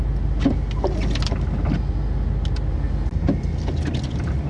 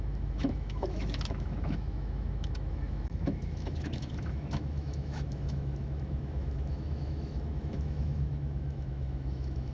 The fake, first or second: second